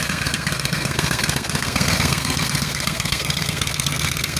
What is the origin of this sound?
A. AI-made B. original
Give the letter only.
A